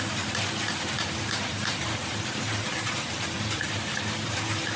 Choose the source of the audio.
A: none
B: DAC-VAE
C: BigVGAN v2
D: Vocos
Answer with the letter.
A